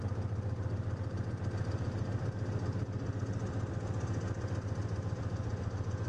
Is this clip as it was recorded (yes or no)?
no